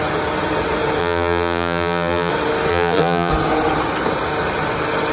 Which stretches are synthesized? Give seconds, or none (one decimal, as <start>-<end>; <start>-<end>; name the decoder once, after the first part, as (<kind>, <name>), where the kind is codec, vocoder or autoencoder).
1.0-2.3 (vocoder, BigVGAN v2); 2.7-3.3